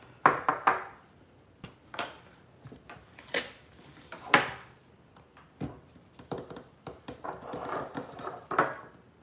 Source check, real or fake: real